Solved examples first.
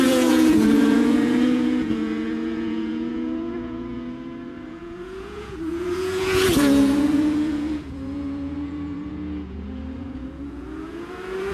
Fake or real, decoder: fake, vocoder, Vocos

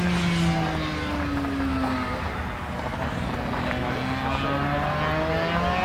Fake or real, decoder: real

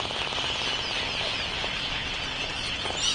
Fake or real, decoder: real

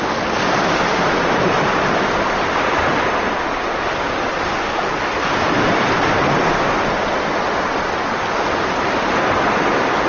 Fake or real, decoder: real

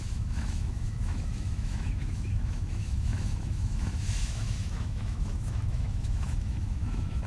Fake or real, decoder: fake, autoencoder, DAC-VAE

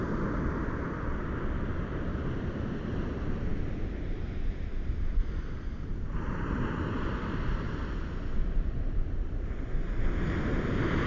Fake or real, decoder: real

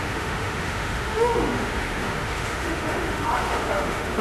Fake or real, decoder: fake, autoencoder, DAC-VAE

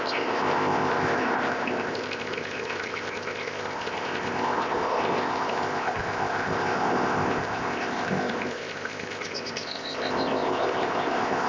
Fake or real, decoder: fake, codec, ZipCodec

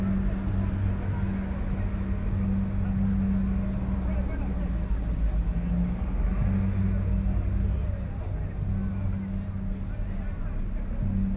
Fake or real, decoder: real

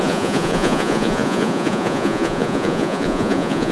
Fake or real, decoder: fake, vocoder, Vocos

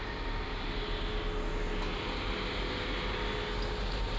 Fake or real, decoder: real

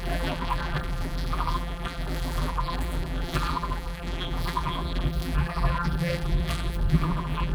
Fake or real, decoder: fake, vocoder, BigVGAN v2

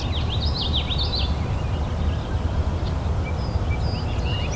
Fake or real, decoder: real